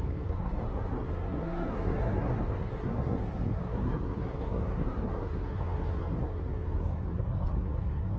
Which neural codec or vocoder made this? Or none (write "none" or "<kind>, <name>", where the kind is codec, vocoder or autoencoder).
codec, SNAC